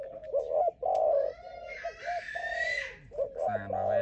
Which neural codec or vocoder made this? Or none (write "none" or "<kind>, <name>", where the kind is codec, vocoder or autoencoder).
none